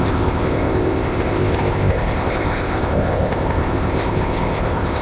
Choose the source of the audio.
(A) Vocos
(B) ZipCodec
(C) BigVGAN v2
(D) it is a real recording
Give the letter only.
B